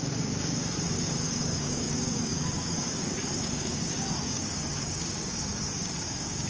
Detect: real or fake fake